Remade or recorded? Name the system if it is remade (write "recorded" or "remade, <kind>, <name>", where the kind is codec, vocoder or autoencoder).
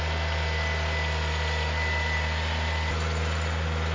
recorded